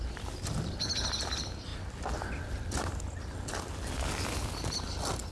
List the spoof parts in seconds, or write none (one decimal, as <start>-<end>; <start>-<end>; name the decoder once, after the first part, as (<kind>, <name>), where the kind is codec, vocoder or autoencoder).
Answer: 0.0-1.7 (vocoder, BigVGAN v2); 2.3-2.9